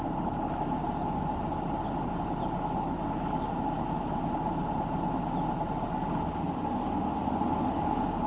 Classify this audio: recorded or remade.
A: recorded